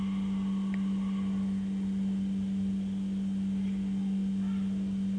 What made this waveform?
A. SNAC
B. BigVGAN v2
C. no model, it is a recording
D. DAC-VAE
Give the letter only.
C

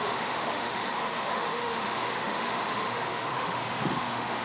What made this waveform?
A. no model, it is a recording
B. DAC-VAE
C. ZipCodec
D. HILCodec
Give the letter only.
B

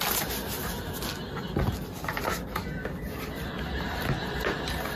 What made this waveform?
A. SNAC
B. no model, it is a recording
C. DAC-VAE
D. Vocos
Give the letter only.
B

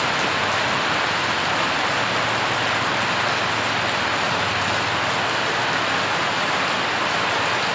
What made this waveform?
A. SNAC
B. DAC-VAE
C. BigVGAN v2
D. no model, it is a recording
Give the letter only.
D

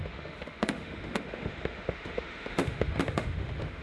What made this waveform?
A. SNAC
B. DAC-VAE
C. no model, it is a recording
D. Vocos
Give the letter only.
B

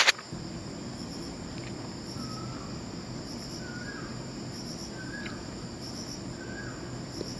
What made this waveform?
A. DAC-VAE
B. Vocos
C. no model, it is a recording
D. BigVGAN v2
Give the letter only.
C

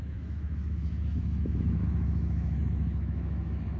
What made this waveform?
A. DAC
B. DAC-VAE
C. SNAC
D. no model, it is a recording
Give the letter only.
B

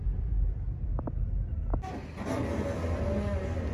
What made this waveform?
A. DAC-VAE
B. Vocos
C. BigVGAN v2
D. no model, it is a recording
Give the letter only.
D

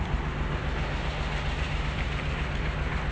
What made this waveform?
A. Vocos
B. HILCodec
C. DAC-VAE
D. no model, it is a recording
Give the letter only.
D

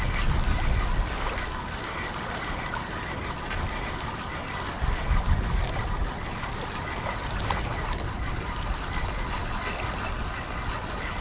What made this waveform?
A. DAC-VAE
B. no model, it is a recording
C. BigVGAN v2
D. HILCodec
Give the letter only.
B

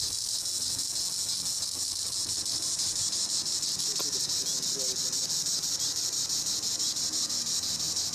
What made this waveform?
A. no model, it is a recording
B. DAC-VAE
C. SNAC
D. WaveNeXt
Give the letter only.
A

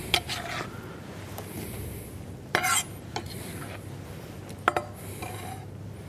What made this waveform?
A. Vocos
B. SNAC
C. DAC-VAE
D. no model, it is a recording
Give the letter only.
D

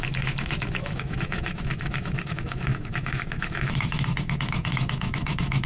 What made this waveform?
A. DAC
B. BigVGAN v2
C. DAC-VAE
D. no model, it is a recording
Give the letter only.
C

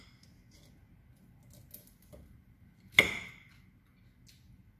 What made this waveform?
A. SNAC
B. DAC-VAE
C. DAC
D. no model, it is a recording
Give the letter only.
D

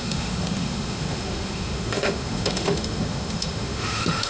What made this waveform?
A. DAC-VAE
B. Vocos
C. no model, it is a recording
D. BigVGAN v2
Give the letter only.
A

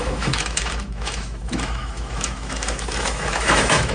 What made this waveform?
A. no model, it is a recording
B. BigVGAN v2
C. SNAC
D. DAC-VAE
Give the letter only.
D